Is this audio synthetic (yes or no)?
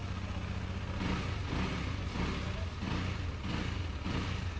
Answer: no